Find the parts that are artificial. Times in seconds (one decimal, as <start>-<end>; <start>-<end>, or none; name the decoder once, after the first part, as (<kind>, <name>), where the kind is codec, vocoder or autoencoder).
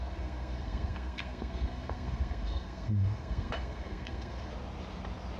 0.0-4.5 (codec, SNAC)